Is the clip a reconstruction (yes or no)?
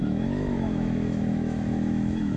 yes